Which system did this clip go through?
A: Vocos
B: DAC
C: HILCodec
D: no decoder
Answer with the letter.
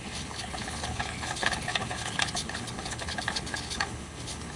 C